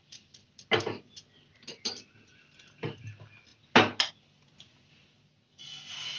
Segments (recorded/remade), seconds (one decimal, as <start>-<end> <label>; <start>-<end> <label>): 0.0-6.2 recorded